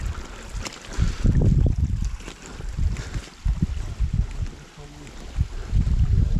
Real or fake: real